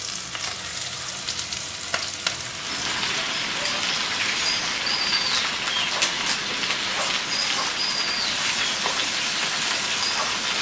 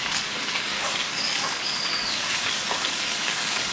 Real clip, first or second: first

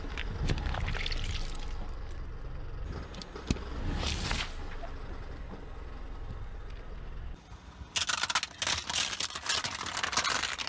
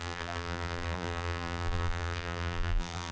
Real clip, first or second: first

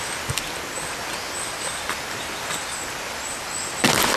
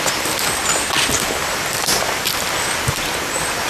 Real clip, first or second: first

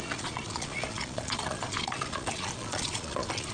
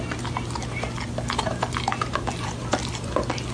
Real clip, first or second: second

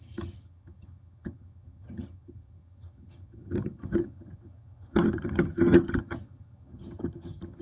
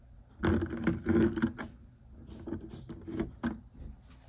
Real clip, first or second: second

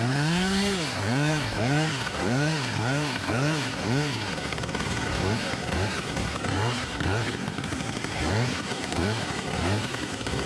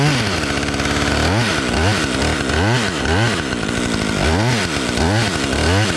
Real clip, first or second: second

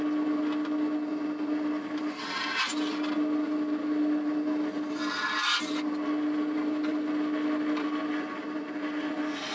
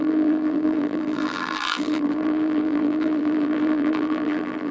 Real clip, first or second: first